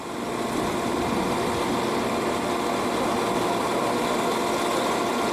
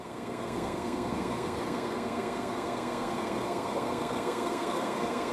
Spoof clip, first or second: second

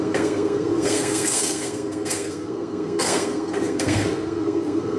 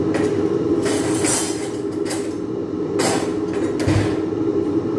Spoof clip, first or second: first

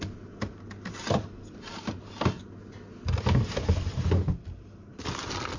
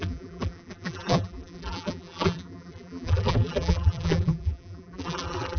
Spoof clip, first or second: second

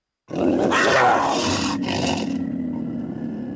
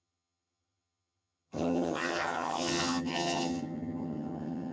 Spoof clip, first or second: second